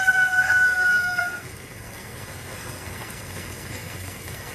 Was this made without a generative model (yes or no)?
no